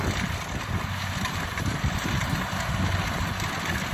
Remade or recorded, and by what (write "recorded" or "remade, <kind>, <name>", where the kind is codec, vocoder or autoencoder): recorded